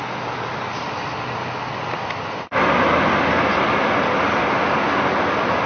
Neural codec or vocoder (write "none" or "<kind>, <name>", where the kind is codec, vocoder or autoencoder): none